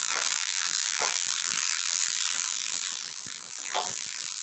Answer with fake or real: fake